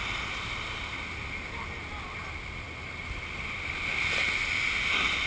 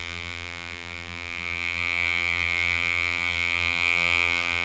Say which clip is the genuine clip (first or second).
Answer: first